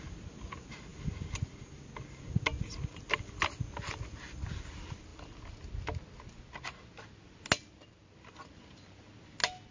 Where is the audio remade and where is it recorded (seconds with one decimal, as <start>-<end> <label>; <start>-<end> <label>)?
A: 0.0-9.7 recorded